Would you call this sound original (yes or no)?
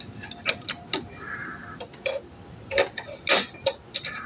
yes